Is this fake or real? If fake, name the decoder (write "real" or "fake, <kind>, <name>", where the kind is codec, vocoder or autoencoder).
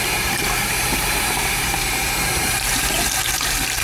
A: fake, vocoder, BigVGAN v2